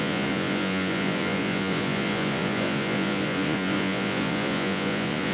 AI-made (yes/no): yes